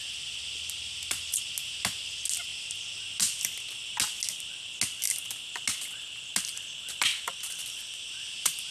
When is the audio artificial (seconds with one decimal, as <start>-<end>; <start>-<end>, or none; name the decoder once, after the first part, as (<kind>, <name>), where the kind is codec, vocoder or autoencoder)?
7.1-8.7 (vocoder, BigVGAN v2)